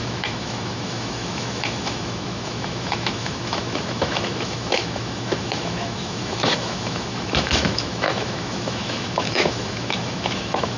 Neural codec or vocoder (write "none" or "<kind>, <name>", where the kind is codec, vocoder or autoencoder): autoencoder, DAC-VAE